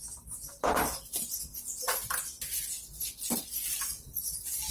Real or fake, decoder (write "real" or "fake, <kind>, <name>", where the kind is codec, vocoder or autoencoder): real